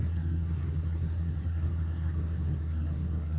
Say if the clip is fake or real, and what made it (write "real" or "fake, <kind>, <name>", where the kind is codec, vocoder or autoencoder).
fake, codec, SNAC